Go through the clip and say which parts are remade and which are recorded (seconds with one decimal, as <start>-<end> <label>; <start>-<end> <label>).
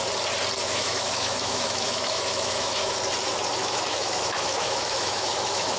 0.0-0.6 recorded; 0.6-2.9 remade; 2.9-3.6 recorded; 3.6-5.8 remade